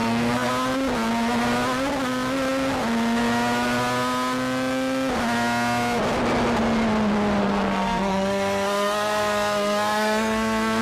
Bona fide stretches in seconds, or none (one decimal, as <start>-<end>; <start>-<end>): 0.5-7.4